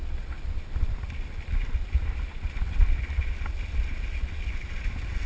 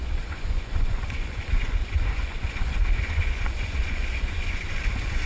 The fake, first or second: second